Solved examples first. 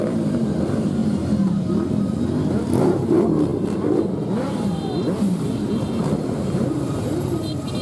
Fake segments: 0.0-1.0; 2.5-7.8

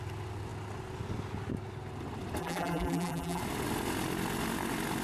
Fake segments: 2.4-3.4

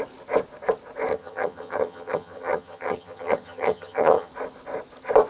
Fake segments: 1.1-4.3

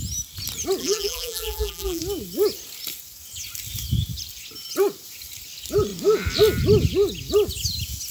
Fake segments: 0.8-2.0

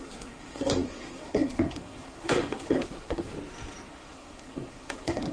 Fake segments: 0.0-3.3; 3.9-5.3

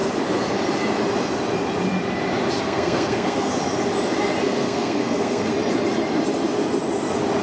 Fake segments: 2.6-3.5; 4.4-5.5